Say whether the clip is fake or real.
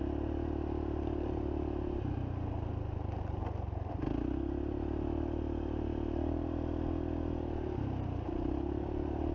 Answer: real